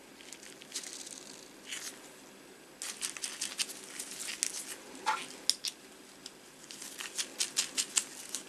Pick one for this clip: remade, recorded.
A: recorded